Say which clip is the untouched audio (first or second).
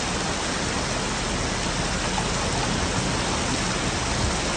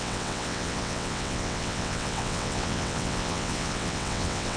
first